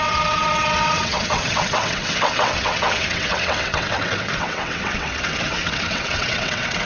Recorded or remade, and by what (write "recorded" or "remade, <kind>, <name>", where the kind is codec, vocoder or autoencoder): remade, vocoder, WaveNeXt